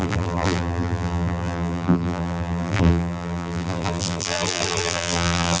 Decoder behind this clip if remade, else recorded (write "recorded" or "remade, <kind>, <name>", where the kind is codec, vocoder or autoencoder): remade, vocoder, BigVGAN v2